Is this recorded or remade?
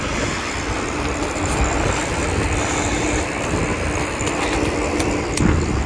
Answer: recorded